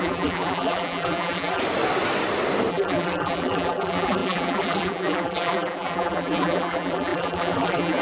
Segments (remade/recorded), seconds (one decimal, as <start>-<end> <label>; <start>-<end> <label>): 0.0-1.6 remade; 1.6-2.7 recorded; 2.7-8.0 remade